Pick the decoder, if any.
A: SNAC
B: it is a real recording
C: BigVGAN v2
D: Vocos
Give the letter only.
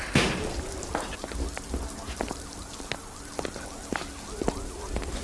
B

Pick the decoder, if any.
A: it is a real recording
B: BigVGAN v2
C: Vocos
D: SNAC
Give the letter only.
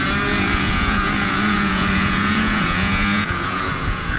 C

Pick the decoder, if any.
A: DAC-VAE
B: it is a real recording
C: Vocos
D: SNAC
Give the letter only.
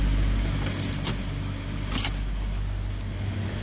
B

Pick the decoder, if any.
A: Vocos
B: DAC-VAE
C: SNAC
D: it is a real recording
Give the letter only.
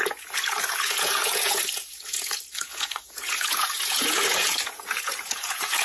A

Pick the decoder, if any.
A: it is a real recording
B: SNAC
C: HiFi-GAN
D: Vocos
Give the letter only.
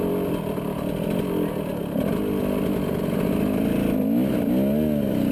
A